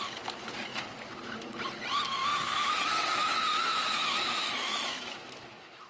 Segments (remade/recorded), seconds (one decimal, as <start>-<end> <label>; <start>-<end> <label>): 0.0-2.2 recorded; 2.2-5.9 remade